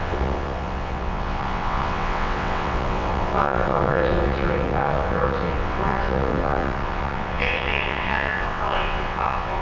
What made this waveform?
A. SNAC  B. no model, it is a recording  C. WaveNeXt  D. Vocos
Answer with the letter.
C